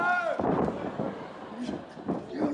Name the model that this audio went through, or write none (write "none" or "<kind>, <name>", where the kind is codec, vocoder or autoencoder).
none